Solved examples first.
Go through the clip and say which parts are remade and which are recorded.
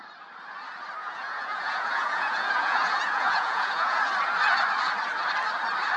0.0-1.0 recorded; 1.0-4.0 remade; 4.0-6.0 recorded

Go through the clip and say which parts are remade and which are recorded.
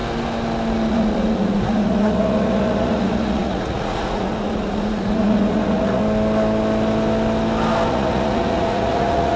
0.0-0.9 recorded; 0.9-6.0 remade; 6.0-7.9 recorded; 7.9-9.4 remade